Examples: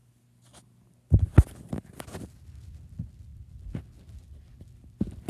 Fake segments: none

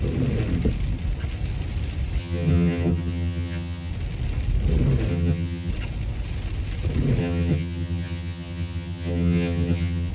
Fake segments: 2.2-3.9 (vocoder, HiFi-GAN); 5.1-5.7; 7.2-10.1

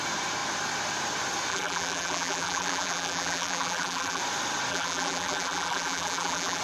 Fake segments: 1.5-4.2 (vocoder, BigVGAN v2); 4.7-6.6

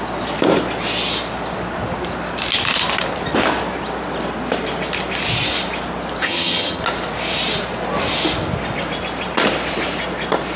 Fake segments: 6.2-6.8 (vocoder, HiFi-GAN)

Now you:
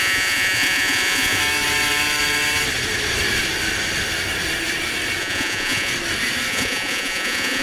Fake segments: 0.0-1.4 (vocoder, Vocos); 5.2-5.9; 6.5-7.6

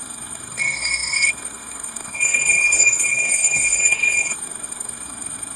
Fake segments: 0.0-5.6 (codec, SNAC)

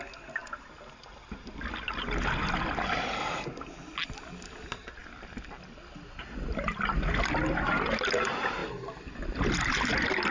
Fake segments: none